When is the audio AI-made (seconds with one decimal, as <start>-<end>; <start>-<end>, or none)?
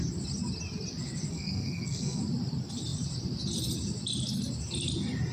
1.3-2.2